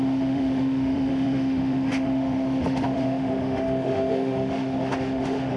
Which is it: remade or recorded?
remade